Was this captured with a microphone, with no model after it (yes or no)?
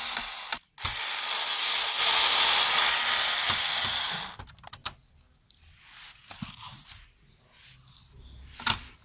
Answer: yes